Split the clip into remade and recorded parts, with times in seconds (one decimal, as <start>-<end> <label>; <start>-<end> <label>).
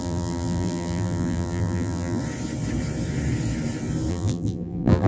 0.0-2.2 remade; 2.2-4.1 recorded; 4.1-5.1 remade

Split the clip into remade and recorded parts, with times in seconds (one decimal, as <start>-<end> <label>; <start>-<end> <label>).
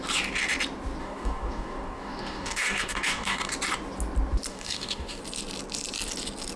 0.0-1.0 recorded; 1.0-3.5 remade; 3.5-4.5 recorded; 4.5-5.2 remade; 5.2-6.6 recorded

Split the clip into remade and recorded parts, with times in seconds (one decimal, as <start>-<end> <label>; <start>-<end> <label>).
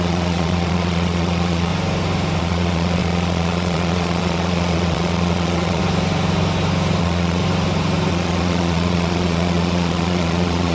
0.0-1.7 remade; 1.7-2.4 recorded; 2.4-5.8 remade; 5.8-7.0 recorded; 7.0-7.4 remade; 7.4-8.1 recorded; 8.1-10.7 remade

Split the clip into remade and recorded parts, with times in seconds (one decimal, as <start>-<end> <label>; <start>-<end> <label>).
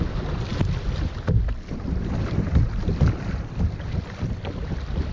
0.0-5.1 recorded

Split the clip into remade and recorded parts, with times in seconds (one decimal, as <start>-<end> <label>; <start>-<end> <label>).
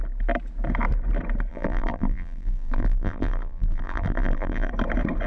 0.0-1.5 recorded; 1.5-4.7 remade; 4.7-5.3 recorded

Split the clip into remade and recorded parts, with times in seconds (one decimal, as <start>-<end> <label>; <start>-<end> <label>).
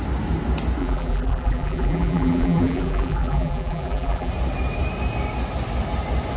0.0-0.8 recorded; 0.8-4.3 remade; 4.3-6.4 recorded